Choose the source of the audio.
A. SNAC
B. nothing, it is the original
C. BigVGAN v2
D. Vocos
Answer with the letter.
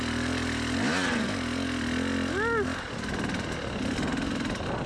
B